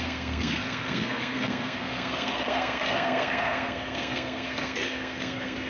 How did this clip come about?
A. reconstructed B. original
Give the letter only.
A